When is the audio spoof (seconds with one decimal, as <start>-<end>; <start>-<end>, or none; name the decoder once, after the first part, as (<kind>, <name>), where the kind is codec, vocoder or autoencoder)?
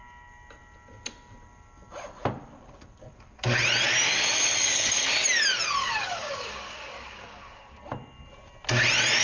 5.8-7.8 (codec, DAC)